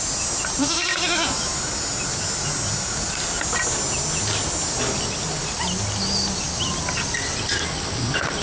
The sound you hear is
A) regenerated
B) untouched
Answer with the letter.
B